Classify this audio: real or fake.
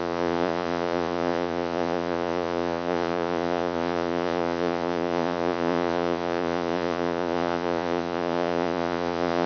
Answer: fake